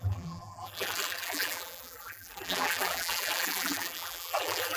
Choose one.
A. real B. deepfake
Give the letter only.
B